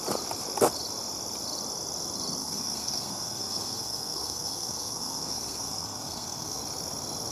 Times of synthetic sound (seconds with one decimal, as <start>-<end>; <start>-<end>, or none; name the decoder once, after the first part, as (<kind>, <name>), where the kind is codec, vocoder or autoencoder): 2.4-6.6 (codec, SNAC)